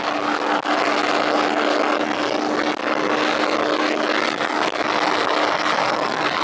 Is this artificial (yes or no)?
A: no